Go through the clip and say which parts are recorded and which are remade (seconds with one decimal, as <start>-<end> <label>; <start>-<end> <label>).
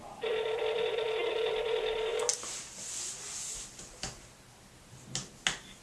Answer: 0.0-5.8 recorded